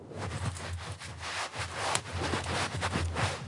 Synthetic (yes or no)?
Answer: no